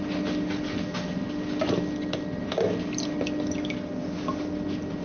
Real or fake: real